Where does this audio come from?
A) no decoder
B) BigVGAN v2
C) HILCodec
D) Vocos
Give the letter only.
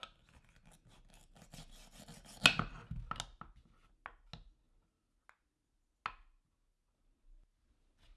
A